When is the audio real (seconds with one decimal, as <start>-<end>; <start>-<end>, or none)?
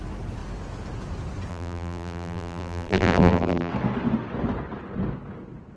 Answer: 0.0-1.5; 3.7-5.8